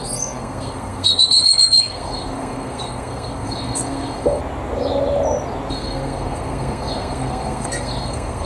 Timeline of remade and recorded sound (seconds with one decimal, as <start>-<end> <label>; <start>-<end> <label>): 0.0-4.4 remade; 4.4-5.7 recorded; 5.7-8.5 remade